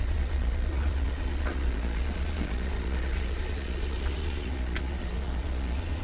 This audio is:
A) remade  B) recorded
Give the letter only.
A